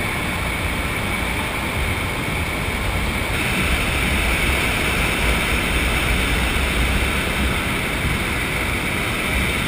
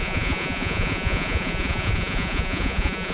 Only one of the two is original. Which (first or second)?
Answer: first